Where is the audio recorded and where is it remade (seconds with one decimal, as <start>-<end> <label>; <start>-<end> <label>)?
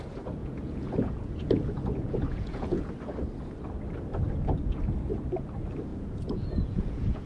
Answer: 0.0-0.4 recorded; 0.4-2.9 remade; 2.9-5.9 recorded; 5.9-7.3 remade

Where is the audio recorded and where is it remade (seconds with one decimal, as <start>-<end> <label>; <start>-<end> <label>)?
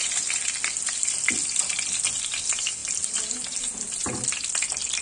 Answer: 0.0-5.0 recorded